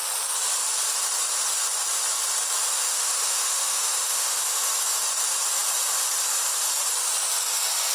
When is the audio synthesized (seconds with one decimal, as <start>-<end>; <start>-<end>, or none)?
2.7-4.4